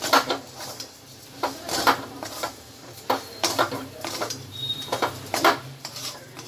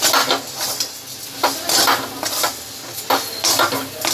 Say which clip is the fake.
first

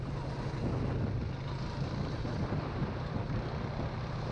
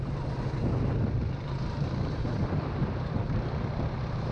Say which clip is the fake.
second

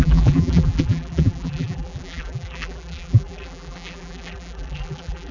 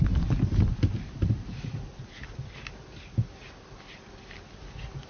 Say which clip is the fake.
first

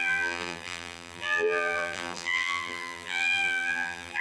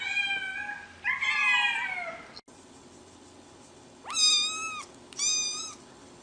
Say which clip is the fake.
first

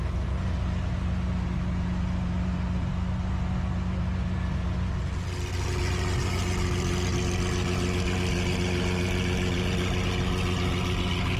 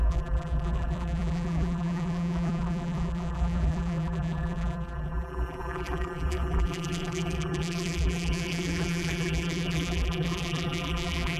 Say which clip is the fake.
second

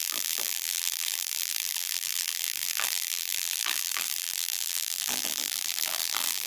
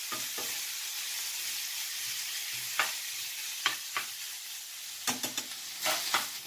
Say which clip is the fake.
first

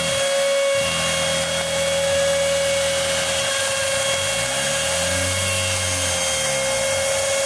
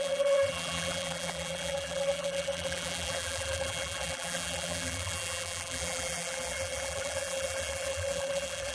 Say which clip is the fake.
second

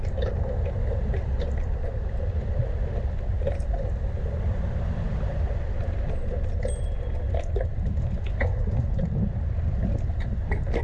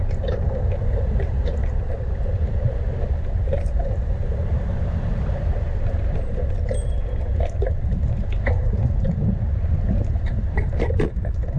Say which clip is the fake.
second